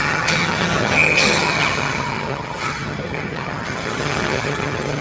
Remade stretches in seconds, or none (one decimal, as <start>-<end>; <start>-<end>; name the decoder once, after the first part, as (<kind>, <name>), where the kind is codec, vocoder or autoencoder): 0.0-5.0 (vocoder, HiFi-GAN)